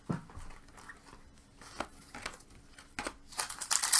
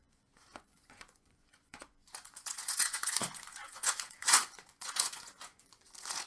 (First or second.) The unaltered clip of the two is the first